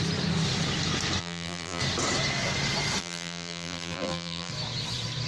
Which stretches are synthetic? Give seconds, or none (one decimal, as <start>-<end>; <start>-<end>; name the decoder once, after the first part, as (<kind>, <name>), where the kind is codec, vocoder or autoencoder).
1.2-1.8 (vocoder, BigVGAN v2); 3.0-4.5